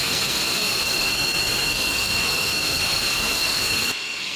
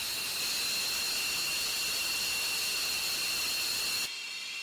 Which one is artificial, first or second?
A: first